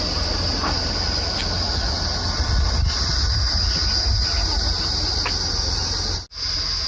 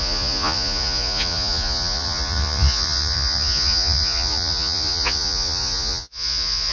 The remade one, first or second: second